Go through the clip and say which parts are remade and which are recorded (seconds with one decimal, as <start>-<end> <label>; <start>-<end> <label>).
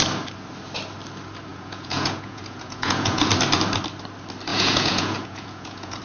0.0-1.5 recorded; 1.5-3.3 remade; 3.3-4.5 recorded; 4.5-6.0 remade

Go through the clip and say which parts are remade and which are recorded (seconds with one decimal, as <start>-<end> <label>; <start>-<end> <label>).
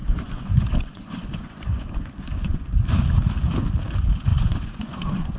0.0-3.2 remade; 3.2-4.3 recorded; 4.3-5.4 remade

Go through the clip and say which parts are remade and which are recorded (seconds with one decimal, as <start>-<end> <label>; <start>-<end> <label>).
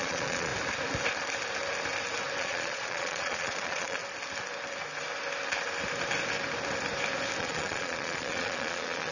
0.0-0.5 remade; 0.5-2.4 recorded; 2.4-4.0 remade; 4.0-7.4 recorded; 7.4-9.1 remade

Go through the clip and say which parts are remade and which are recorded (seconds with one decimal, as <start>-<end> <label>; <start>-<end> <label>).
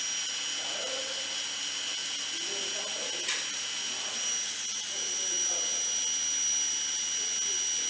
0.0-7.9 recorded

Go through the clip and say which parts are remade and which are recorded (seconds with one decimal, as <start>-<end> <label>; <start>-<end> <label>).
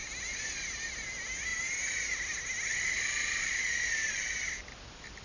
0.0-5.2 recorded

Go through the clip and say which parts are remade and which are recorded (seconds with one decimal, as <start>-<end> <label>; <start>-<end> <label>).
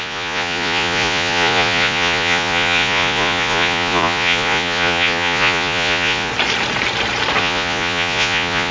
0.0-6.3 remade; 6.3-7.4 recorded; 7.4-8.7 remade